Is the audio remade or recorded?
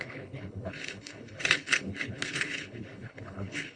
remade